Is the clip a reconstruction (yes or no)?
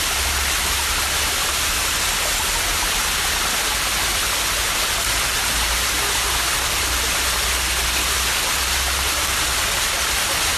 no